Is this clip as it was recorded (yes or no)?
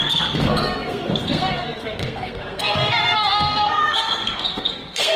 no